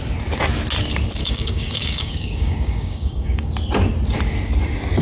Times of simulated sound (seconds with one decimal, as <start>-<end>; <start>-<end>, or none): 1.2-3.5